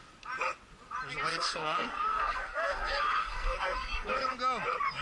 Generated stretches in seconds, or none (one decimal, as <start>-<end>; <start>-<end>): 1.3-4.3